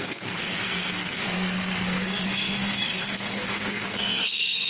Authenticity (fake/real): fake